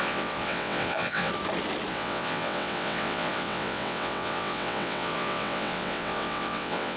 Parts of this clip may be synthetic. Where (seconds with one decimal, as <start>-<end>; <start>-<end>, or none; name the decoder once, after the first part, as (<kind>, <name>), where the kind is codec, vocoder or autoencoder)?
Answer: 0.0-1.3 (vocoder, WaveNeXt); 1.9-7.0